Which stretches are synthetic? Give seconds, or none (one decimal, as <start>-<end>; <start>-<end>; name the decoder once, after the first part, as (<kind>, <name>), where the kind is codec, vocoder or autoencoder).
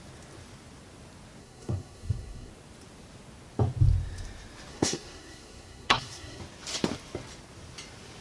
1.4-2.5 (codec, SNAC); 4.7-6.4